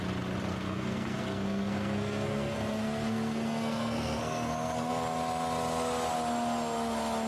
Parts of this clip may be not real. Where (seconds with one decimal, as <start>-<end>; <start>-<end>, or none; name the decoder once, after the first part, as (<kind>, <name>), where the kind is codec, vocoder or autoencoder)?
0.5-4.9 (codec, SNAC)